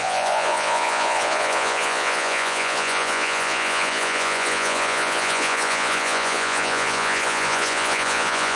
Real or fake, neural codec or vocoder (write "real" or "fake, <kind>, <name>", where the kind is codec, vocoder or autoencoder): fake, vocoder, Vocos